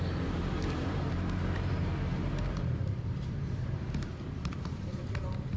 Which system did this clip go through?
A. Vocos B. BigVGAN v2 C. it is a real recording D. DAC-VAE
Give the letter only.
B